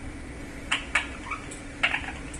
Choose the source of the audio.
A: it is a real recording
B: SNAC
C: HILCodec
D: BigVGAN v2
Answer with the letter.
A